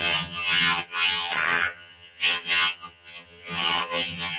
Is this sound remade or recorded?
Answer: remade